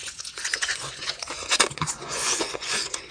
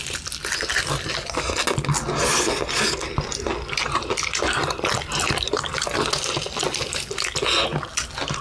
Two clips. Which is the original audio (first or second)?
second